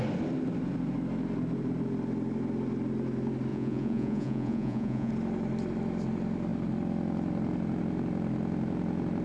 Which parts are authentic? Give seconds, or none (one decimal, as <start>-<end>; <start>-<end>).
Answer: 0.0-3.5; 5.1-9.2